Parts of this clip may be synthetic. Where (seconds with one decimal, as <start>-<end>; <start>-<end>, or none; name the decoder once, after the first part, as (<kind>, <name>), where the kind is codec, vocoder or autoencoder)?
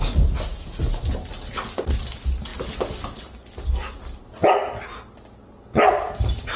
none